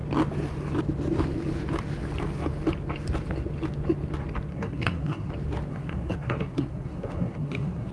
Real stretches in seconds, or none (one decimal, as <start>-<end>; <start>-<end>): 0.0-4.5; 5.3-5.7